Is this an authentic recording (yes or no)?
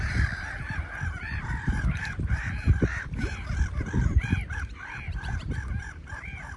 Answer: no